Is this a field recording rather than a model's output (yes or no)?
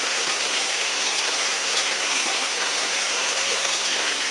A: no